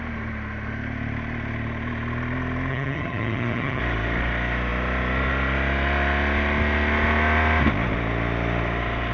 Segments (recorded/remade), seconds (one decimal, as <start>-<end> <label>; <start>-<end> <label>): 0.0-2.7 recorded; 2.7-3.8 remade; 3.8-9.1 recorded